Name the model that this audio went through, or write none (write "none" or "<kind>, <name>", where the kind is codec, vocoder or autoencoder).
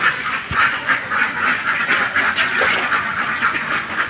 vocoder, Vocos